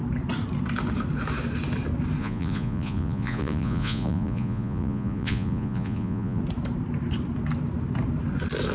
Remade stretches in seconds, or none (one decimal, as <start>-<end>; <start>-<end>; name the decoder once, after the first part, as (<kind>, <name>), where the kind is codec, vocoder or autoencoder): 2.2-6.4 (vocoder, Vocos)